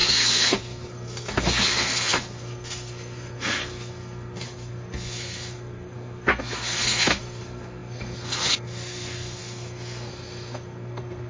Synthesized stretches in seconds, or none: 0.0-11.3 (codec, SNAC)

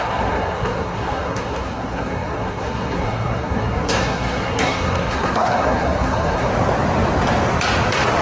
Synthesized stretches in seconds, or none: 0.0-6.5 (codec, SNAC)

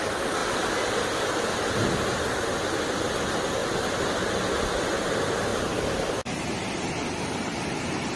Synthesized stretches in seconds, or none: none